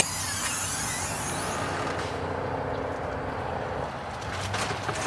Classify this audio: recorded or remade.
recorded